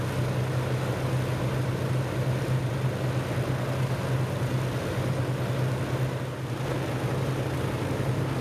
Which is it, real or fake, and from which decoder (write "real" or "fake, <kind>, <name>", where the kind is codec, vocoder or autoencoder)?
real